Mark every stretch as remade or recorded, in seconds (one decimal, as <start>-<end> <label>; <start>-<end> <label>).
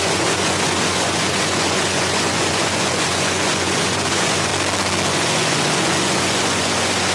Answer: 0.0-4.5 remade; 4.5-5.1 recorded; 5.1-7.1 remade